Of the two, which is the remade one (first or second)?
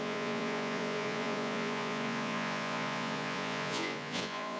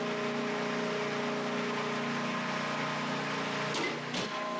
first